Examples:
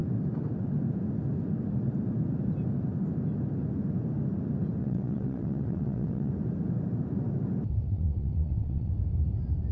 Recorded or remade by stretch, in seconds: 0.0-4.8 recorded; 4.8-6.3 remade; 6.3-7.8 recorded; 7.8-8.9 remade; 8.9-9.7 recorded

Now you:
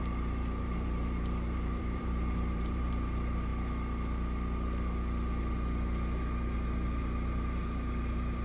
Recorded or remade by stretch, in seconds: 0.0-3.5 remade; 3.5-7.0 recorded; 7.0-8.4 remade

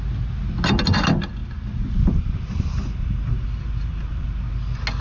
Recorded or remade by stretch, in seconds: 0.0-5.0 recorded

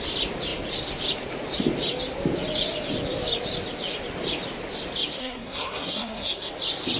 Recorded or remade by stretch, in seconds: 0.0-5.2 recorded; 5.2-6.5 remade; 6.5-7.0 recorded

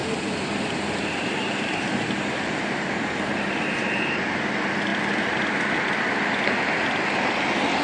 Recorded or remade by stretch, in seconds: 0.0-7.8 recorded